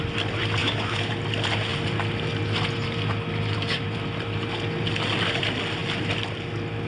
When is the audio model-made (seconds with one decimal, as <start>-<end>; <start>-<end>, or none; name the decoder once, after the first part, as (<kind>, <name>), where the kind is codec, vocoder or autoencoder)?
0.6-1.1 (autoencoder, DAC-VAE)